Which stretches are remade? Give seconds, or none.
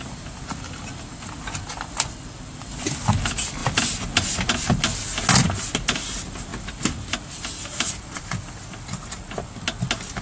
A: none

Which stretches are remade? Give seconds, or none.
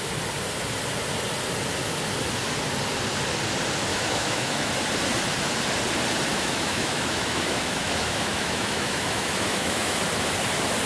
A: 3.9-4.7 (autoencoder, DAC-VAE); 6.3-10.0